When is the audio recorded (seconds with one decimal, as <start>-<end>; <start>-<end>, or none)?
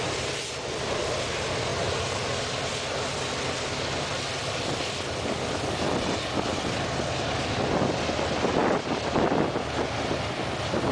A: 0.0-10.9